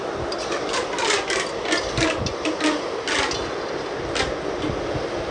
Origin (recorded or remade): recorded